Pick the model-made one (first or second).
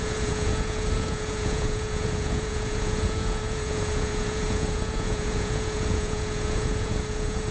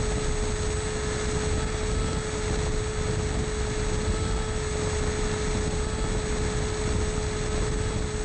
first